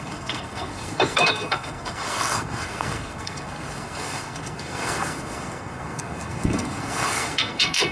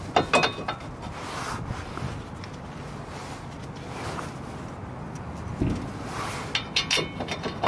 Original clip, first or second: second